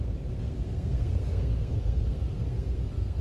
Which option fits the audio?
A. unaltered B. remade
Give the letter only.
B